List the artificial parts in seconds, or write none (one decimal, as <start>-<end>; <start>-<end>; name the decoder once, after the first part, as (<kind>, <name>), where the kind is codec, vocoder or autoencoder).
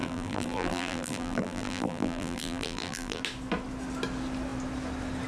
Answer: 0.0-3.2 (vocoder, BigVGAN v2)